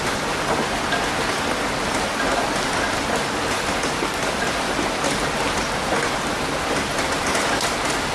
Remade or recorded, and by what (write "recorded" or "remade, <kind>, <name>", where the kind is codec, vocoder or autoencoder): recorded